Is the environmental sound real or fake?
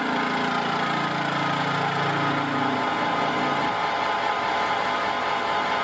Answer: real